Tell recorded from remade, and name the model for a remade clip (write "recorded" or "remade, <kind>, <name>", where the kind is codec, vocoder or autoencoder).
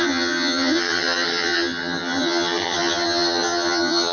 remade, vocoder, HiFi-GAN